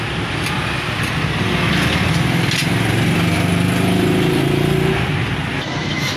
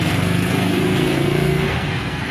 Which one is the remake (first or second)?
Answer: second